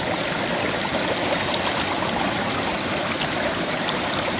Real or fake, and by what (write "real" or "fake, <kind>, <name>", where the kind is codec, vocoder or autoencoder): real